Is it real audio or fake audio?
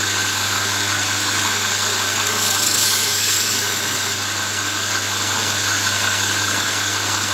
fake